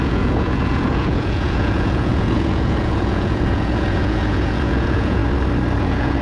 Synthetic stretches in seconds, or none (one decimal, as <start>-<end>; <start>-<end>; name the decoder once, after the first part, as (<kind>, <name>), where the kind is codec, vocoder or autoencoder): 0.0-5.2 (vocoder, Vocos); 5.8-6.2